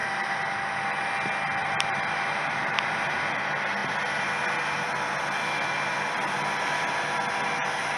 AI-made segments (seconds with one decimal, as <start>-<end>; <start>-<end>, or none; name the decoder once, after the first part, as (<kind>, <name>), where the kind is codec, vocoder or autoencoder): 1.6-3.1 (vocoder, BigVGAN v2)